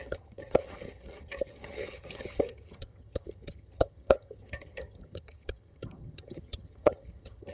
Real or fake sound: fake